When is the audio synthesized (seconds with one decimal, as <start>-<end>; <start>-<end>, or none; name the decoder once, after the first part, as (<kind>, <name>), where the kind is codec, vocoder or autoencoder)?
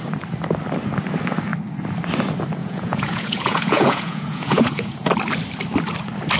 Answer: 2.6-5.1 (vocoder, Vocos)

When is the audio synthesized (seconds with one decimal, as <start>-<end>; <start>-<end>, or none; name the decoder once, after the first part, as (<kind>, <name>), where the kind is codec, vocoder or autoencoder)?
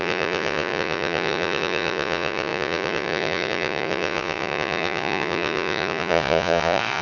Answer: 0.0-7.0 (vocoder, Vocos)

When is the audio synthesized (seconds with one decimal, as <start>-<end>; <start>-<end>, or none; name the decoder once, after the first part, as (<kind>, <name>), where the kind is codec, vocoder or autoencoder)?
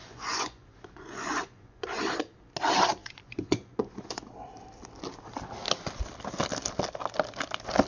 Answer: 0.0-2.0 (vocoder, Vocos); 3.0-4.2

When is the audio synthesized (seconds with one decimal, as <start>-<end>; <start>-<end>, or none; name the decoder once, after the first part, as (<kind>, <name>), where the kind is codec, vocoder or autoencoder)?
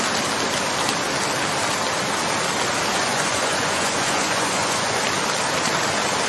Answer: 2.9-5.0 (vocoder, Vocos)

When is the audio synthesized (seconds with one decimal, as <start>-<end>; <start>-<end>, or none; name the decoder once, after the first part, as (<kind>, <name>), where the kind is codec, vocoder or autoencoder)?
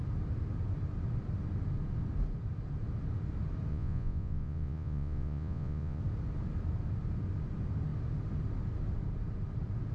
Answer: 3.7-6.0 (vocoder, Vocos)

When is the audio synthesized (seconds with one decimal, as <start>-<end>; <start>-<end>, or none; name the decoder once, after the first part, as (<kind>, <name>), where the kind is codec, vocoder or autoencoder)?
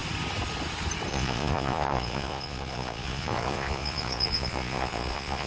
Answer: 1.1-5.5 (vocoder, Vocos)